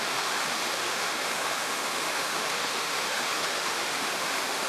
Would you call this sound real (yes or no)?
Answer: no